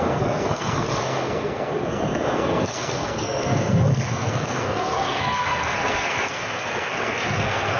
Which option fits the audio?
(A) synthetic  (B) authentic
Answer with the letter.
A